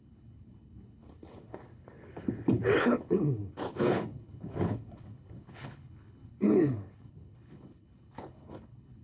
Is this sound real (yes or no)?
no